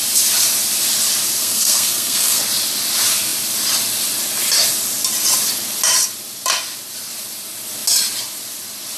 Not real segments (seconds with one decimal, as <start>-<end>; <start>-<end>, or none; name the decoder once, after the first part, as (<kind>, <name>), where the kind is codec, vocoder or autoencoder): 1.4-2.4 (codec, SNAC)